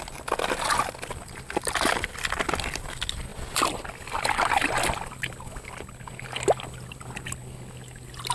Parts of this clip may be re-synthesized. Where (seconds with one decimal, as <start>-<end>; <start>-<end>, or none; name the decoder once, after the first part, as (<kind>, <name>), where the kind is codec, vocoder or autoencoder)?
none